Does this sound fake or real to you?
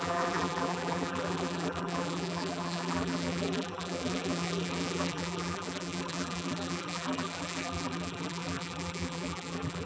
fake